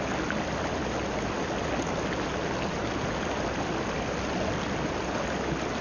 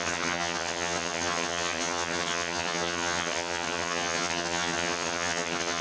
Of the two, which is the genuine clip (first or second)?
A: first